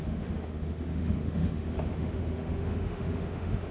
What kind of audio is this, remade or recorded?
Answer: remade